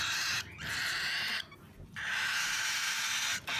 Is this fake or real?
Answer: real